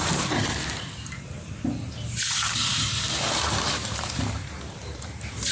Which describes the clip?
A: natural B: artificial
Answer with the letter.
B